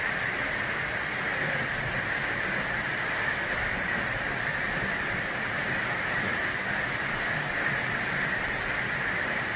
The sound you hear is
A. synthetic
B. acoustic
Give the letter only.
A